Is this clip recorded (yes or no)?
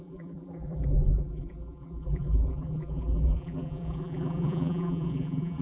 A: no